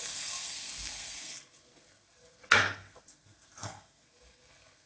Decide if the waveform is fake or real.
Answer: fake